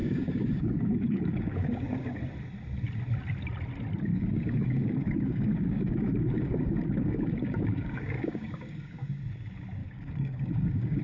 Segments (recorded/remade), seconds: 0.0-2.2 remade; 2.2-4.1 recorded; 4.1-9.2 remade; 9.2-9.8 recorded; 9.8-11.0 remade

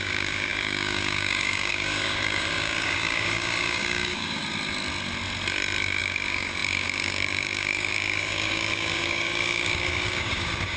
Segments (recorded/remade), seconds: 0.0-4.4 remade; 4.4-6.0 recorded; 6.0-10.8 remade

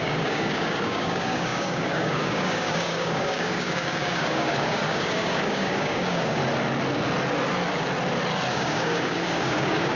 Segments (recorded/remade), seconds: 0.0-6.4 remade; 6.4-8.5 recorded; 8.5-10.0 remade

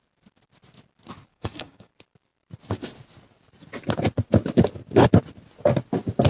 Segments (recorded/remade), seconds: 0.0-1.3 recorded; 1.3-1.9 remade; 1.9-6.3 recorded